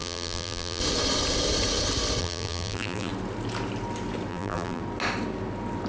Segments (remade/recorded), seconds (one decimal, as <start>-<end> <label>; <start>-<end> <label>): 0.0-0.8 remade; 0.8-2.2 recorded; 2.2-3.1 remade; 3.1-4.3 recorded; 4.3-4.8 remade; 4.8-5.9 recorded